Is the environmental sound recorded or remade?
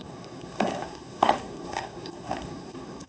remade